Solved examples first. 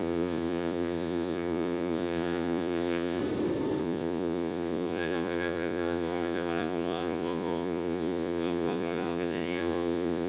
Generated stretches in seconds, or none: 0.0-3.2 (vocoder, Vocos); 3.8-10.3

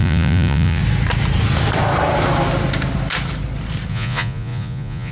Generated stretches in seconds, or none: 0.0-0.8 (vocoder, Vocos); 3.9-5.1

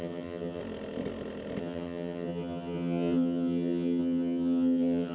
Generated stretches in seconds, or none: 0.0-0.6 (vocoder, HiFi-GAN); 1.6-5.1

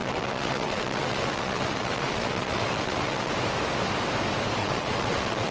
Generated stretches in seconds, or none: 0.0-3.3 (vocoder, WaveNeXt); 4.6-5.5

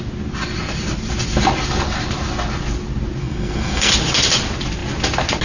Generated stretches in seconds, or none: 3.2-3.9 (codec, SNAC)

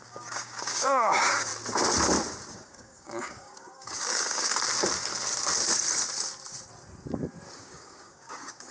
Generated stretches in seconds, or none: 0.0-1.5 (codec, DAC); 2.5-4.5; 7.6-8.7

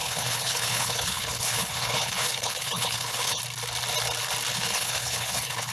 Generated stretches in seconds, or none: 0.0-3.4 (codec, HILCodec); 4.5-5.7